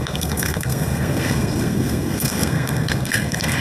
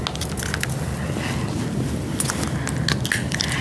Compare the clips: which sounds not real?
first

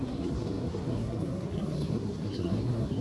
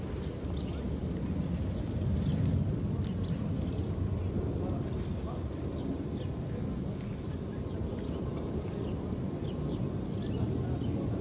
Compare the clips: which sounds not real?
first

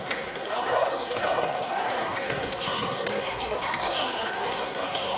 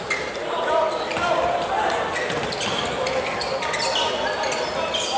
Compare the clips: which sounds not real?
first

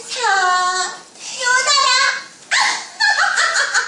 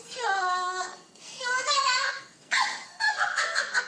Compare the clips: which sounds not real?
second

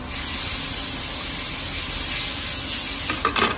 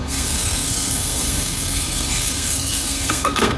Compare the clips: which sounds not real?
second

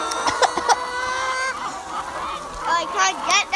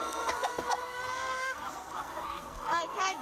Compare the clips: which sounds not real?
second